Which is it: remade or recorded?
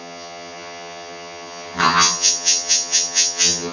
remade